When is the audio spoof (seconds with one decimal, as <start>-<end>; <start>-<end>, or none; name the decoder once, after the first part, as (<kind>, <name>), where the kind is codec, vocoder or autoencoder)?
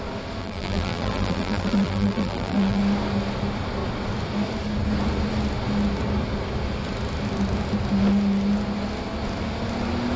0.4-2.8 (vocoder, BigVGAN v2)